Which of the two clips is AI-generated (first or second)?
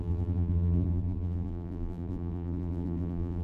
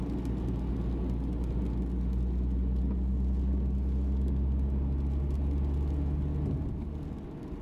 first